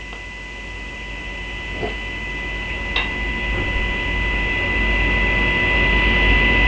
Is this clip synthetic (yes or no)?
no